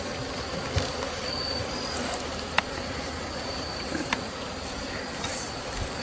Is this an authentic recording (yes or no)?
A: yes